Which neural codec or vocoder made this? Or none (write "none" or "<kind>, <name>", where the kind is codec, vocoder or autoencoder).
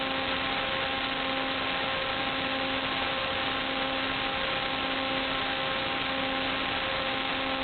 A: none